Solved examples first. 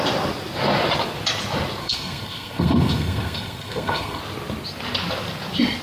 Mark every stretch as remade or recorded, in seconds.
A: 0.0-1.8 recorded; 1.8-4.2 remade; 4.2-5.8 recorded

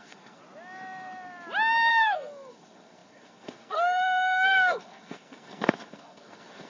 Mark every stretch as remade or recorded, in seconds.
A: 0.0-0.4 remade; 0.4-1.9 recorded; 1.9-6.7 remade